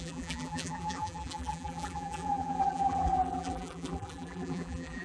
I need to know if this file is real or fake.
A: fake